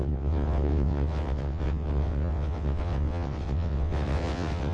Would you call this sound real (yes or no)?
no